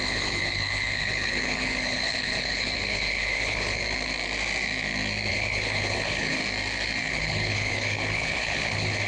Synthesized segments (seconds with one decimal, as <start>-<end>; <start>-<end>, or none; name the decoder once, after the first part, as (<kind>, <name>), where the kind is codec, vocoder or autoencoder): 0.0-3.8 (codec, HILCodec); 5.3-6.4; 7.1-9.1